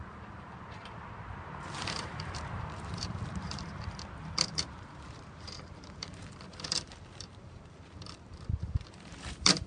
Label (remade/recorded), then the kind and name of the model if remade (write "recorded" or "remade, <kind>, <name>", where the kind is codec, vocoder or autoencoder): remade, vocoder, BigVGAN v2